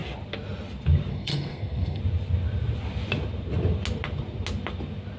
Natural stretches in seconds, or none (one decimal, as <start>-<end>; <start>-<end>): 0.0-1.1; 2.0-5.2